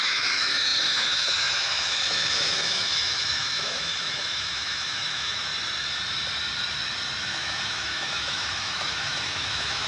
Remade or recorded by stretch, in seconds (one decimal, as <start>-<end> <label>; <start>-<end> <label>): 0.0-5.5 remade; 5.5-7.2 recorded; 7.2-9.9 remade